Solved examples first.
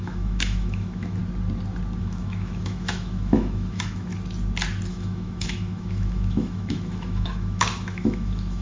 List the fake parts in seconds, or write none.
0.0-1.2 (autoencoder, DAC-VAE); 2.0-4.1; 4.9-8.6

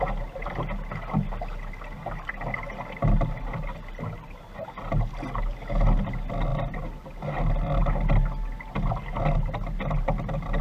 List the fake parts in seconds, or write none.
none

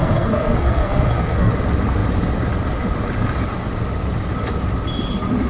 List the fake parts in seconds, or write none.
0.0-1.5 (codec, SNAC)

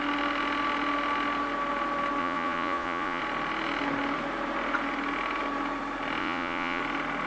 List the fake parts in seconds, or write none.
2.2-3.2 (vocoder, Vocos); 6.2-6.8